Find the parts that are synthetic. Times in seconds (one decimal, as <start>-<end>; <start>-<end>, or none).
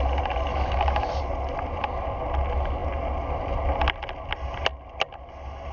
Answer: 0.5-1.2